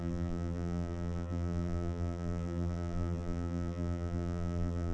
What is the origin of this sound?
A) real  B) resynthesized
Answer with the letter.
B